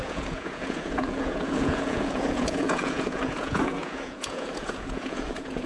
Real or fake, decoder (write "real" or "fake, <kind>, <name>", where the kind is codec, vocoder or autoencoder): fake, vocoder, Vocos